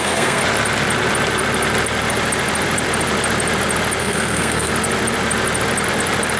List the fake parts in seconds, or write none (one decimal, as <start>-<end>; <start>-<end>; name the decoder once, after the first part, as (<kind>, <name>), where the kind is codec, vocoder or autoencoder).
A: 0.0-0.4 (codec, SNAC); 4.0-4.7